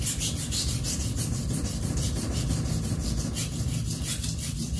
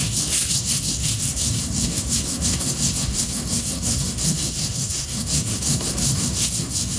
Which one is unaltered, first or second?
first